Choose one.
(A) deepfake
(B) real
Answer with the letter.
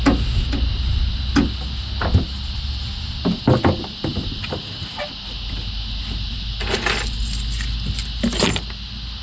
B